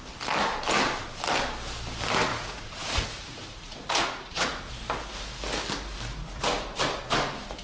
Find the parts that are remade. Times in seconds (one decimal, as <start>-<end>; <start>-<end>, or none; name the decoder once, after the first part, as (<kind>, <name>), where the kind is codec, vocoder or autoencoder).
2.3-4.7 (vocoder, Vocos)